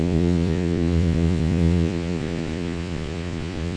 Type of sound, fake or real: fake